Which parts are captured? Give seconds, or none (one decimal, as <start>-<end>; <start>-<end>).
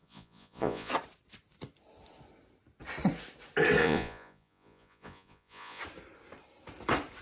0.9-3.8; 5.8-7.2